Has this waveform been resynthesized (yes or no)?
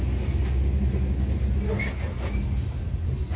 no